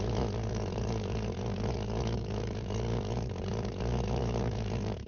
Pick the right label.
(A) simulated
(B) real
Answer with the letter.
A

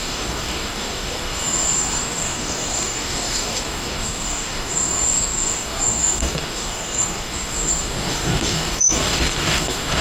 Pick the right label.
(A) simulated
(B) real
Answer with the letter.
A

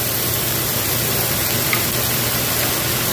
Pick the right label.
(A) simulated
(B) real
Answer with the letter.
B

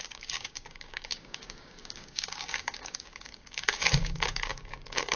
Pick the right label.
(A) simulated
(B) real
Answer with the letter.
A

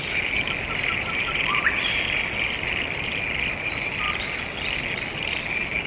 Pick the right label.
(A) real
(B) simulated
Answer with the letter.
A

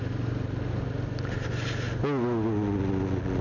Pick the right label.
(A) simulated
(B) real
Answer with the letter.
B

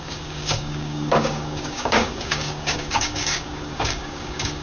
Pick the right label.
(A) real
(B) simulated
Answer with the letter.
B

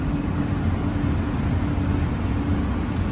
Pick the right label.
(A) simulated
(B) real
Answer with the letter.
B